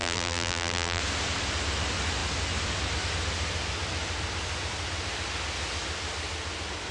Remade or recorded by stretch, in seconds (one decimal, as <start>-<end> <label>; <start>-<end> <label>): 0.0-1.0 remade; 1.0-6.9 recorded